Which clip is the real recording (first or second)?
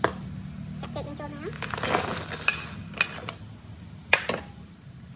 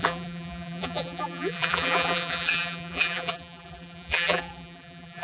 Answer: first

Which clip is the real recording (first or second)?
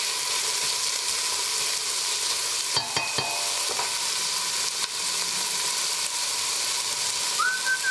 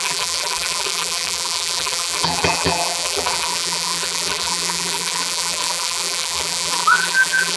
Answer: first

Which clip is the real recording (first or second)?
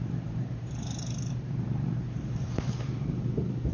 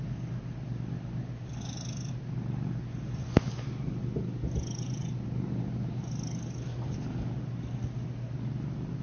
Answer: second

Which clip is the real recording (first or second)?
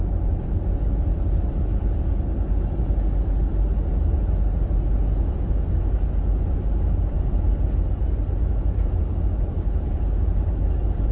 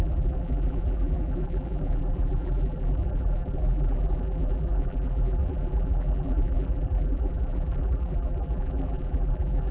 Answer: first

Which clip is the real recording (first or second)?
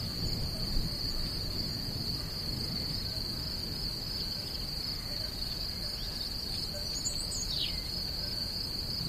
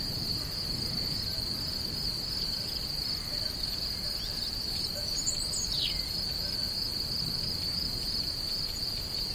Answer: first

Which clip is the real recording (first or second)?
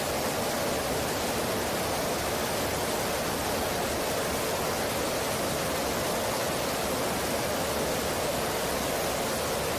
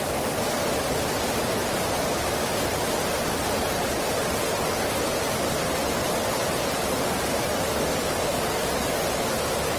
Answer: first